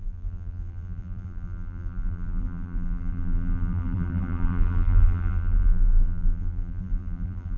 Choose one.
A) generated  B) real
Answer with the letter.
A